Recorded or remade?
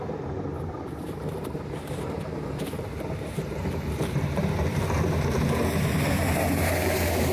remade